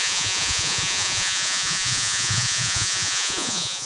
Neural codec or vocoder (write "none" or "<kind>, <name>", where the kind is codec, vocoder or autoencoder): vocoder, Vocos